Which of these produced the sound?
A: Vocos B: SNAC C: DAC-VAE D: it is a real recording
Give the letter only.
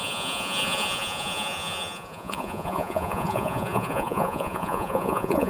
A